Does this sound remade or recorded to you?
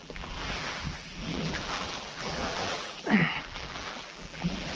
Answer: remade